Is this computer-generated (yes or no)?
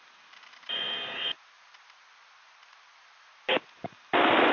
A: no